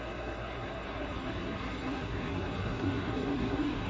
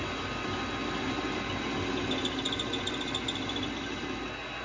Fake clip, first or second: first